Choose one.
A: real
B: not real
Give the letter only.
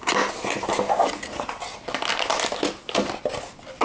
A